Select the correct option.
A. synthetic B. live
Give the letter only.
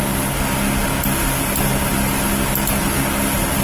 B